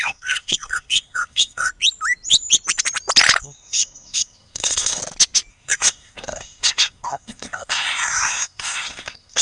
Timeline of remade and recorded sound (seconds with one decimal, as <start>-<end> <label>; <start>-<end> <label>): 0.0-1.7 remade; 1.7-3.4 recorded; 3.4-5.0 remade; 5.0-5.5 recorded; 5.5-9.4 remade